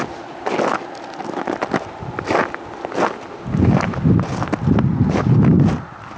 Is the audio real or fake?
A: real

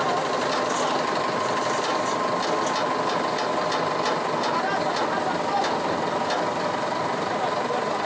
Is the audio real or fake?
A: real